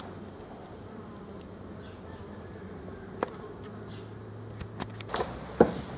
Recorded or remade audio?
recorded